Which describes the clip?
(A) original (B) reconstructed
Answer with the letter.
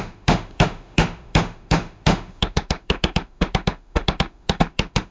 B